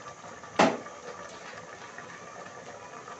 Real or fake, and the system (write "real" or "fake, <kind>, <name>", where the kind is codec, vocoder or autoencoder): real